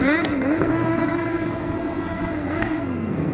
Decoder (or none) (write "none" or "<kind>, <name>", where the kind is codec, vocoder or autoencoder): codec, SNAC